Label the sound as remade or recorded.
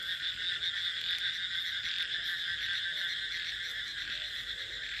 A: recorded